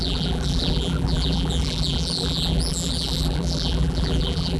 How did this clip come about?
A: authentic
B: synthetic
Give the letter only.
B